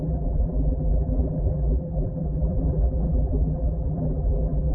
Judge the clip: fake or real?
fake